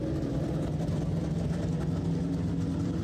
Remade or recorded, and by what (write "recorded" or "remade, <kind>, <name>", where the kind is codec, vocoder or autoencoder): recorded